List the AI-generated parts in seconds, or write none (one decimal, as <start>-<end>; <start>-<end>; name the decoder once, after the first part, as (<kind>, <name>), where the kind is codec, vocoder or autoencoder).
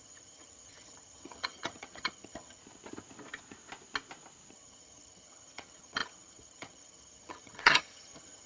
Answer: 0.0-2.6 (vocoder, HiFi-GAN); 4.5-8.5